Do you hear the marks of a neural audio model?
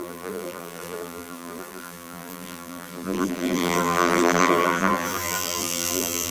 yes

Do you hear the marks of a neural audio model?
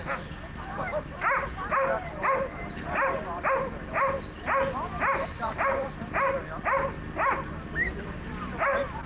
no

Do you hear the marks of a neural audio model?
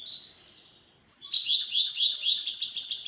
no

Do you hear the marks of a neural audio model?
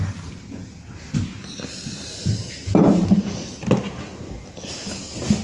no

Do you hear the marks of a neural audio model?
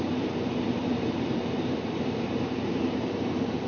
yes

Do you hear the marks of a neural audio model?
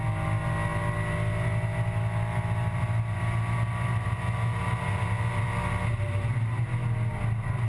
no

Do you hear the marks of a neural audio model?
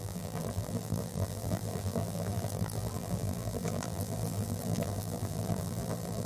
yes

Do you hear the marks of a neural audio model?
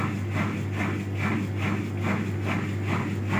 no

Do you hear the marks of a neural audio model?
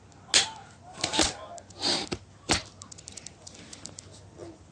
no